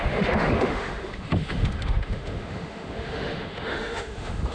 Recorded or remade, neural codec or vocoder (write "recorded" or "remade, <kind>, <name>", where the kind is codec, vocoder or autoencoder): remade, autoencoder, DAC-VAE